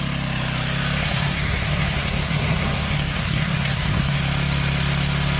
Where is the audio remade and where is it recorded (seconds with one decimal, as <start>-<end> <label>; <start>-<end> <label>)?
0.0-1.0 recorded; 1.0-4.2 remade; 4.2-5.4 recorded